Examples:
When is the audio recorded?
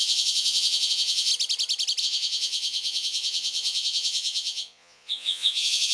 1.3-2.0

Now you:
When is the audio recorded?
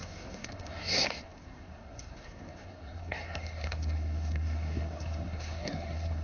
none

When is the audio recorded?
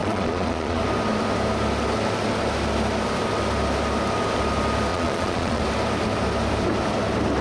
0.8-4.9; 5.6-7.4